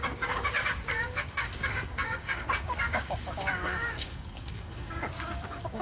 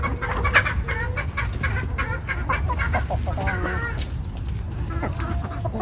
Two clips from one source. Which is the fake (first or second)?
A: first